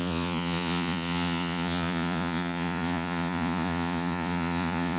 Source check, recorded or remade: remade